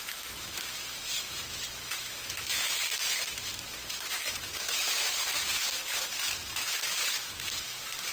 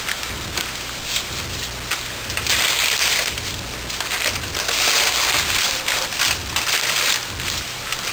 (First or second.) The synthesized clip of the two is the first